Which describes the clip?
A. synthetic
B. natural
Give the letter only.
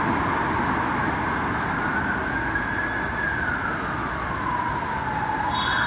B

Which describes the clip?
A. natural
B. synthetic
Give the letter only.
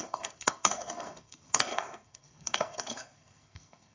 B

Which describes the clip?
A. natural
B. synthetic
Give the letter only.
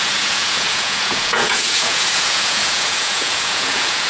B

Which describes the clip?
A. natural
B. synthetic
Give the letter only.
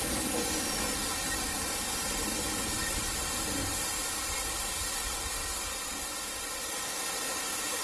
A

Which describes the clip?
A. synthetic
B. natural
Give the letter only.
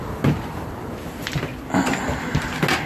B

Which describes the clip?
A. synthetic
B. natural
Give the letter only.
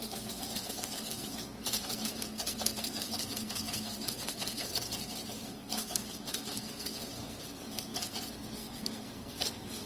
A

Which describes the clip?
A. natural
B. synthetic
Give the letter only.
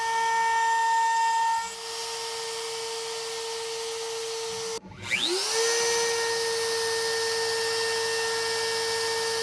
A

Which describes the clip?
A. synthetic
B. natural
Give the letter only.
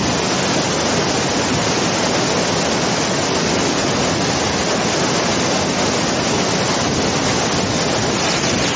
B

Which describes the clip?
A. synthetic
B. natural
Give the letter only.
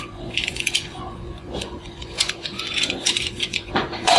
A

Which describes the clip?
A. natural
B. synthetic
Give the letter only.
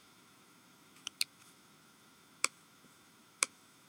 B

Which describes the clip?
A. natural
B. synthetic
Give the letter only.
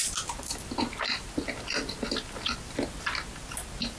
A